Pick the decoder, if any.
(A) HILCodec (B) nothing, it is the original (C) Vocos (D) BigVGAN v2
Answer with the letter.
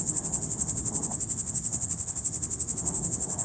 A